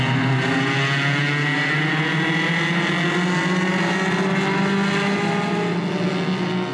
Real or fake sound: real